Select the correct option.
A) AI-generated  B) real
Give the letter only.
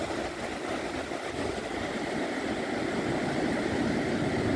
B